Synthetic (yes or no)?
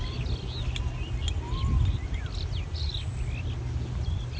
no